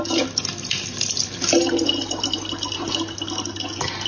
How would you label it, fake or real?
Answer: real